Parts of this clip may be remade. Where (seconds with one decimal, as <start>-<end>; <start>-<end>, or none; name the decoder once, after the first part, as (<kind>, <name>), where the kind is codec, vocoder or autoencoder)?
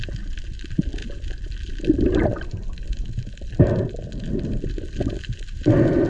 none